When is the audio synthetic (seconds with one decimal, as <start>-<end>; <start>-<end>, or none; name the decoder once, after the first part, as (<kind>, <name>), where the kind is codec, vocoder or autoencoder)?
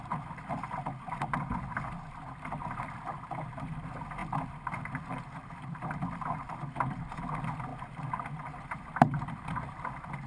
none